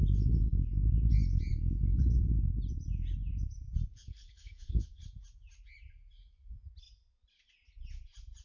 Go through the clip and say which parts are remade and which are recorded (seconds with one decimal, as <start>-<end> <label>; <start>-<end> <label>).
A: 0.0-3.9 recorded; 3.9-5.0 remade; 5.0-8.4 recorded